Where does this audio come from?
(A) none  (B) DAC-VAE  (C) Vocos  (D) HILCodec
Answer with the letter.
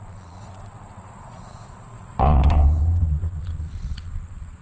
C